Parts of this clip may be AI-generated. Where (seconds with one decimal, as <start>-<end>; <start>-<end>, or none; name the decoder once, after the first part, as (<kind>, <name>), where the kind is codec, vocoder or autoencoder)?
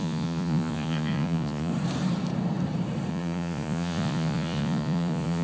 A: 0.0-1.7 (vocoder, Vocos); 3.1-5.4